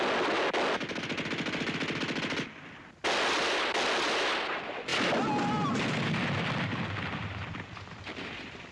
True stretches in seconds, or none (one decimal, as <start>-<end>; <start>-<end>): 0.0-8.7